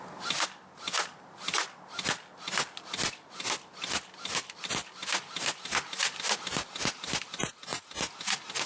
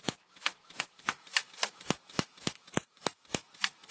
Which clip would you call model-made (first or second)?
second